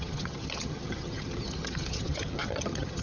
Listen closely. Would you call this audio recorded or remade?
remade